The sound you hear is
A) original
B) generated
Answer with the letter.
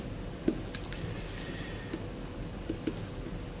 A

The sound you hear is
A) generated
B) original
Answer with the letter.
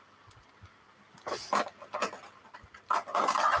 B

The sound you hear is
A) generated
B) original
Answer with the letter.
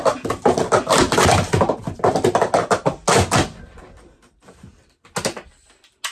B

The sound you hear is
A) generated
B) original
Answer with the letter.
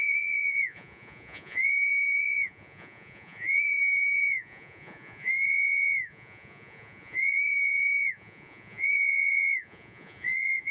A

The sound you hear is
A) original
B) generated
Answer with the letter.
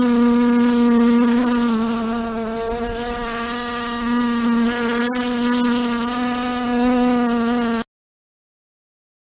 A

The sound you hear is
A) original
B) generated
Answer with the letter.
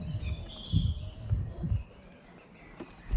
A